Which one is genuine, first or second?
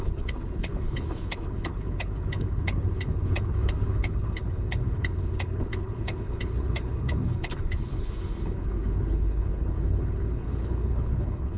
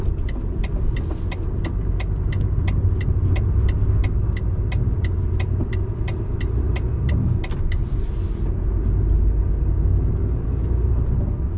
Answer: second